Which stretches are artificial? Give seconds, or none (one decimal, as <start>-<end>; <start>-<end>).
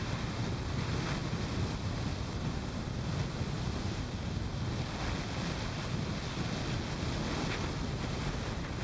none